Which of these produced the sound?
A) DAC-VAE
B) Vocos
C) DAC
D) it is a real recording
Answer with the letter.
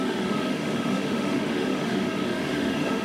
A